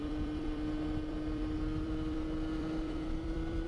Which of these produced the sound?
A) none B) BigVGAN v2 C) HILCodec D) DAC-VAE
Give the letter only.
B